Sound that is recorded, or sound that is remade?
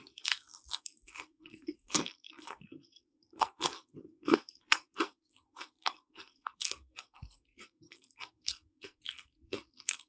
remade